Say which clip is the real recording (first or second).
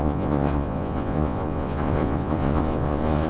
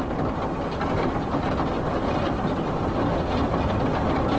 second